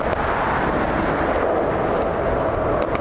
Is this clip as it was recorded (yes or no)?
yes